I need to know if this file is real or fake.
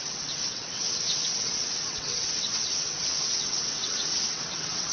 fake